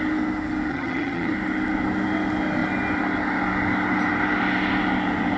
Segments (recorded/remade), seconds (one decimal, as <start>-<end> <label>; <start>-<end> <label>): 0.0-0.7 recorded; 0.7-1.3 remade; 1.3-5.4 recorded

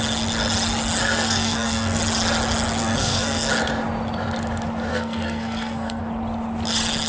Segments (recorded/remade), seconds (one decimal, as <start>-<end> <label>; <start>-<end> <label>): 0.0-1.0 recorded; 1.0-2.0 remade; 2.0-2.8 recorded; 2.8-3.5 remade; 3.5-4.9 recorded; 4.9-6.0 remade; 6.0-7.1 recorded